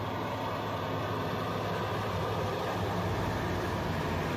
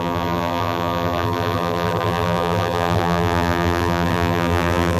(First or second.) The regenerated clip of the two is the second